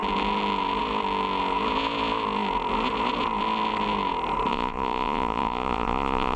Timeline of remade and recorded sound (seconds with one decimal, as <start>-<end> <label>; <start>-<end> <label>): 0.0-4.5 recorded; 4.5-6.4 remade